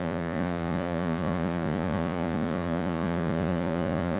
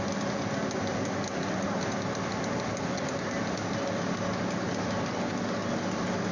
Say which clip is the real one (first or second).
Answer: second